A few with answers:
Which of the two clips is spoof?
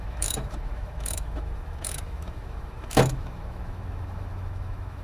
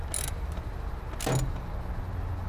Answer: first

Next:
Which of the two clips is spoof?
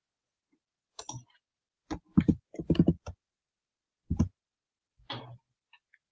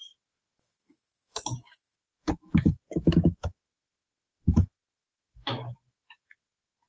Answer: second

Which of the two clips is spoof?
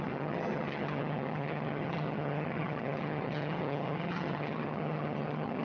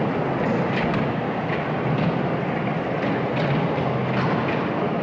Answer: first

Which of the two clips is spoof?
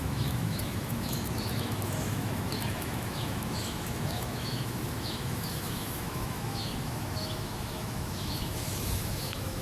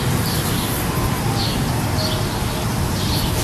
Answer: first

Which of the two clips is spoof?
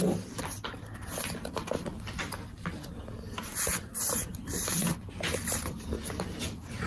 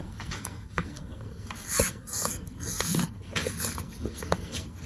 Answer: second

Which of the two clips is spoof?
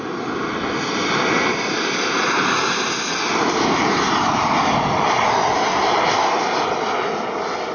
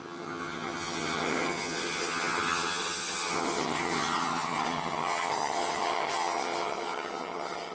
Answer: second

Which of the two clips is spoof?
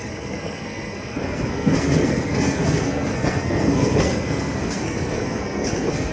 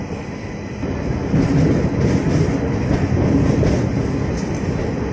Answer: first